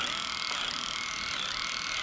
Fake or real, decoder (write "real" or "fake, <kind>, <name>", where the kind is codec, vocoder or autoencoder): real